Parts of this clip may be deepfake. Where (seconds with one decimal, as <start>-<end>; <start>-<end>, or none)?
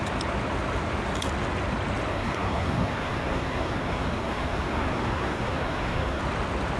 2.1-6.2